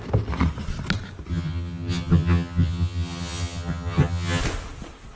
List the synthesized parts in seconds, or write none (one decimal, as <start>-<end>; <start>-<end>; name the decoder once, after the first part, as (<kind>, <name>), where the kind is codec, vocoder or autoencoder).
1.3-4.4 (vocoder, HiFi-GAN)